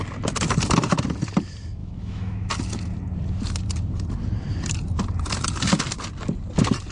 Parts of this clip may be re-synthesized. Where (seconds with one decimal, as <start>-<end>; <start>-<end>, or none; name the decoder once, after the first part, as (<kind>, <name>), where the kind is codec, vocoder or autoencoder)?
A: 1.8-2.5 (autoencoder, DAC-VAE)